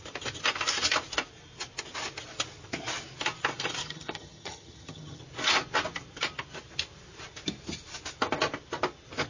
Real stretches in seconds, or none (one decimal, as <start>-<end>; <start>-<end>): 0.0-3.8; 5.2-9.3